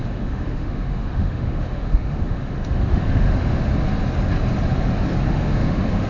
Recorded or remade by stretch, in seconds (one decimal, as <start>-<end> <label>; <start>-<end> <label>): 0.0-3.7 remade; 3.7-5.3 recorded; 5.3-6.1 remade